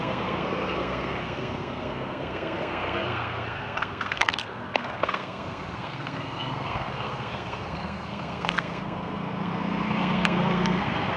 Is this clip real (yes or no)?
no